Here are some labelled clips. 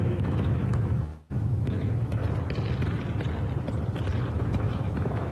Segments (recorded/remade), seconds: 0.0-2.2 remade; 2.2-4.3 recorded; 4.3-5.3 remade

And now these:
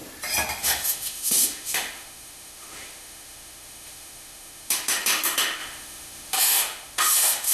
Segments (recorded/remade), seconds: 0.0-0.6 recorded; 0.6-7.5 remade

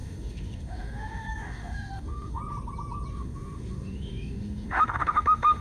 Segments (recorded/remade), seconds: 0.0-2.4 remade; 2.4-3.1 recorded; 3.1-5.6 remade

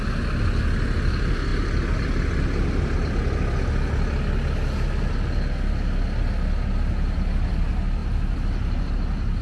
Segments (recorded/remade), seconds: 0.0-9.4 recorded

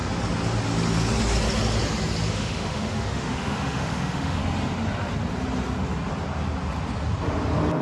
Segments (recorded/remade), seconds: 0.0-2.3 recorded; 2.3-4.4 remade; 4.4-7.8 recorded

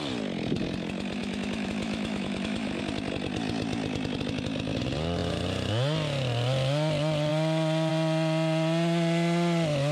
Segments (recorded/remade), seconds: 0.0-1.2 recorded; 1.2-2.8 remade; 2.8-9.9 recorded

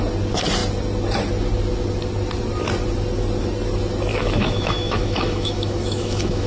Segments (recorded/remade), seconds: 0.0-4.1 recorded; 4.1-6.5 remade

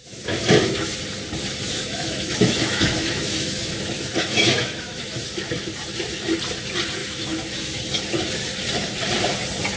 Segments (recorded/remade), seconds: 0.0-0.9 remade; 0.9-1.5 recorded; 1.5-5.1 remade; 5.1-7.0 recorded; 7.0-7.8 remade; 7.8-9.8 recorded